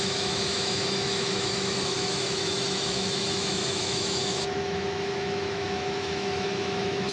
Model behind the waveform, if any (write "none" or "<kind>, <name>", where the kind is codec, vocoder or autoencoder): autoencoder, DAC-VAE